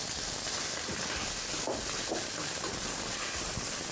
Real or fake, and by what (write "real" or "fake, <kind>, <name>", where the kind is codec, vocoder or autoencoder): real